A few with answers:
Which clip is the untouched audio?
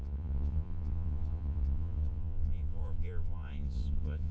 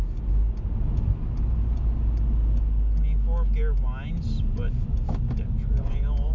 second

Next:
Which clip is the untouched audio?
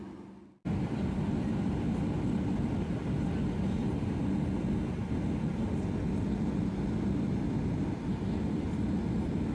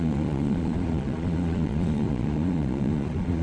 first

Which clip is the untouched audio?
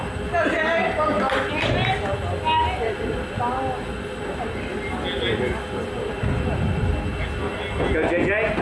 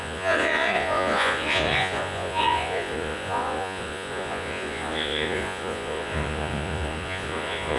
first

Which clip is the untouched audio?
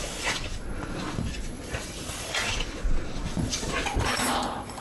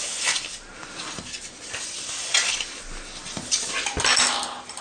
second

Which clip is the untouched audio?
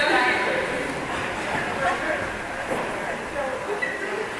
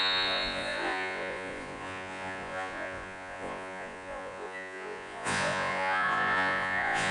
first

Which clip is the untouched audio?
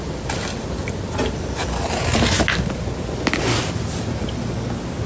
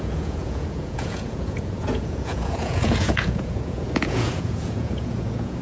first